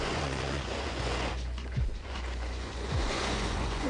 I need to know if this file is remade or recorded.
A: remade